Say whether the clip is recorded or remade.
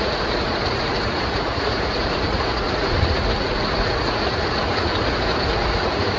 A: remade